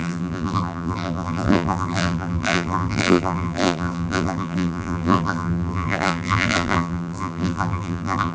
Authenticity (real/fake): fake